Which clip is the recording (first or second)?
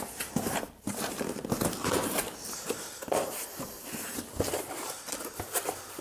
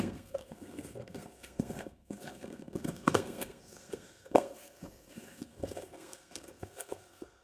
first